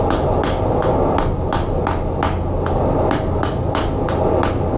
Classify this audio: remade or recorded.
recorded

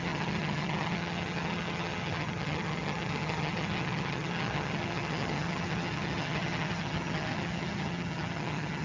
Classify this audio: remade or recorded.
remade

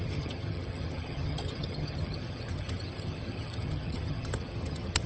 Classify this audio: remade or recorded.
remade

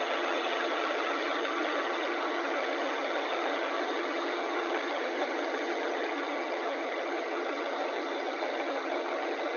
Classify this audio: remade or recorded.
remade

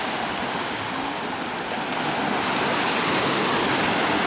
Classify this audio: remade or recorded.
recorded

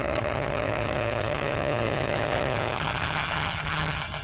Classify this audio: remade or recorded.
remade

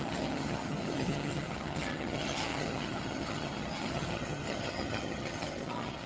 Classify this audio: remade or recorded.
remade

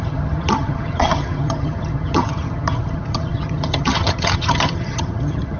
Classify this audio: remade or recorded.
remade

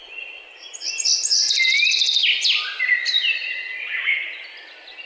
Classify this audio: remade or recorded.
recorded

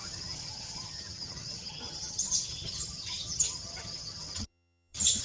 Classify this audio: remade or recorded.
remade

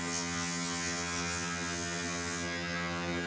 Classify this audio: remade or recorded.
remade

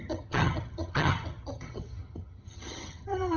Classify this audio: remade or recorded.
remade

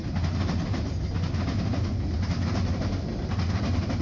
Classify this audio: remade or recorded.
recorded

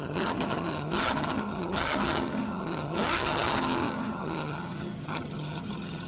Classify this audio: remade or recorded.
remade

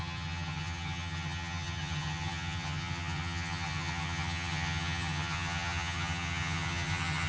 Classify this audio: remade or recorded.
remade